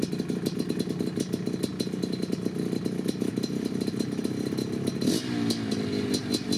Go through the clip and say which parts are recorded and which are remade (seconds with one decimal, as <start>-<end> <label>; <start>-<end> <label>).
0.0-6.6 recorded